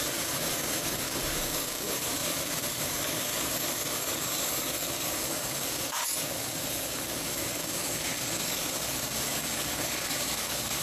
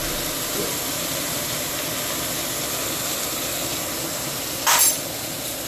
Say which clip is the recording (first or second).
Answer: second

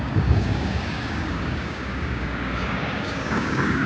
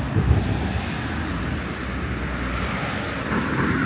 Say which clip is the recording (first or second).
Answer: second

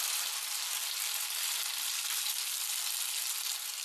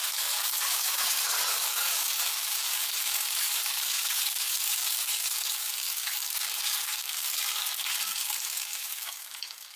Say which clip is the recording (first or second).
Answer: first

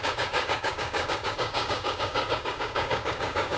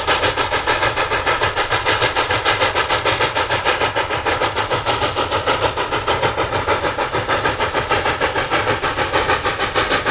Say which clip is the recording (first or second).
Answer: second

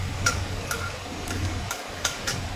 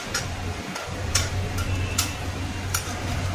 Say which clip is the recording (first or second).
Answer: second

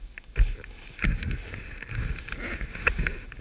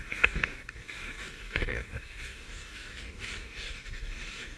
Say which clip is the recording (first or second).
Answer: first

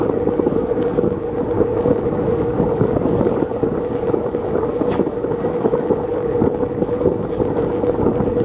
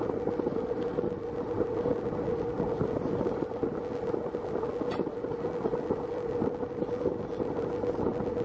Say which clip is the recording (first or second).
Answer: second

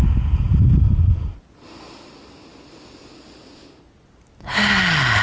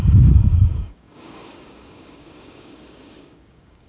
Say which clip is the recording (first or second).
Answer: first